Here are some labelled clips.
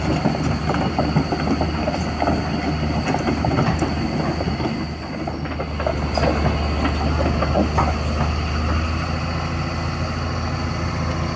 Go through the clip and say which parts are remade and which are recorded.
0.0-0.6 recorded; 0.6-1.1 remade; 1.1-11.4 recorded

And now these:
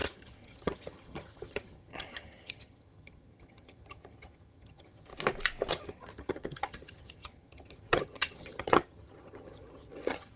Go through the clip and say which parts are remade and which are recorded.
0.0-5.1 remade; 5.1-5.7 recorded; 5.7-10.4 remade

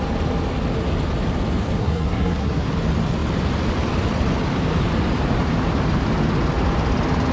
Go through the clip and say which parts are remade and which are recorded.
0.0-1.8 recorded; 1.8-2.7 remade; 2.7-7.3 recorded